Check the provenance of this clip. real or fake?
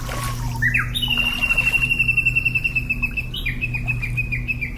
real